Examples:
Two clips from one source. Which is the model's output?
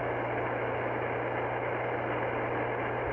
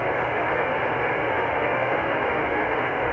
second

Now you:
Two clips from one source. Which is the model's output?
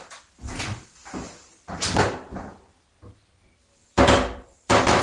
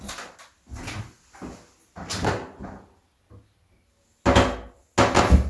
first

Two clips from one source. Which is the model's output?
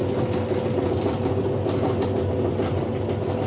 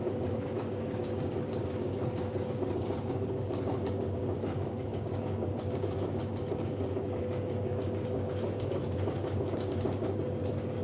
second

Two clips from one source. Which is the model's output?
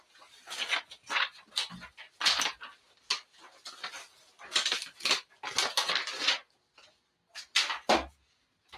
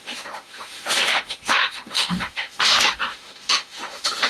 second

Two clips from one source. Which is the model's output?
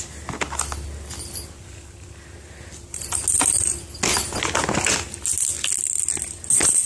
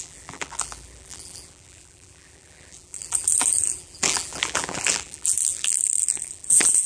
second